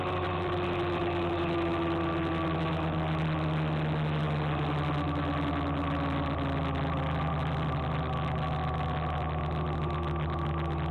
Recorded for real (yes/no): yes